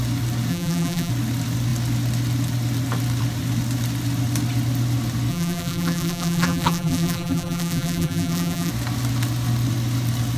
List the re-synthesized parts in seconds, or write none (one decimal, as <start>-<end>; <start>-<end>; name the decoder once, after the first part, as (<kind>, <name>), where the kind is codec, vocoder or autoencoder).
0.5-1.1 (vocoder, BigVGAN v2); 5.3-8.7